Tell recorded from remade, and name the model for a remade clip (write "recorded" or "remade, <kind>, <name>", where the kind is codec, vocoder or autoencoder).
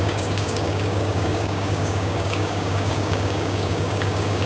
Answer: remade, codec, DAC